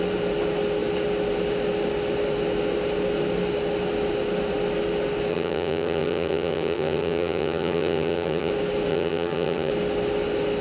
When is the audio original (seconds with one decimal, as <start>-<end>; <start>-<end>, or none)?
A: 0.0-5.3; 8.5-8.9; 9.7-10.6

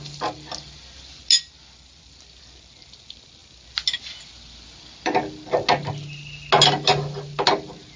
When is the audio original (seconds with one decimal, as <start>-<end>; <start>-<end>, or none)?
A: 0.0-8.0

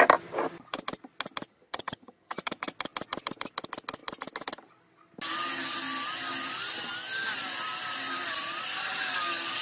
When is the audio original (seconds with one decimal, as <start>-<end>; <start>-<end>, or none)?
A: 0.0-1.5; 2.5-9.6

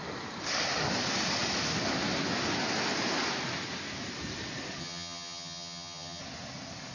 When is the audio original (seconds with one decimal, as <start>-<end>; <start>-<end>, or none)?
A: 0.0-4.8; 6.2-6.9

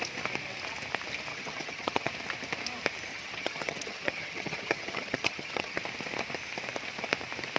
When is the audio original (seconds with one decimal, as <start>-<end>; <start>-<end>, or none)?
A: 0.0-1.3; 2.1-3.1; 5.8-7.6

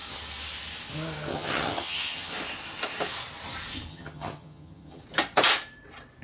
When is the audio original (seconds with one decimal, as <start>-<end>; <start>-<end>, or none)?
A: 0.0-1.3; 2.3-3.9; 5.0-6.2